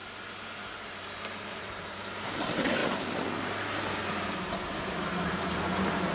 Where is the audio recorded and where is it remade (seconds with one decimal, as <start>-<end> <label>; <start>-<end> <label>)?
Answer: 0.0-1.4 recorded; 1.4-2.8 remade; 2.8-4.5 recorded; 4.5-6.1 remade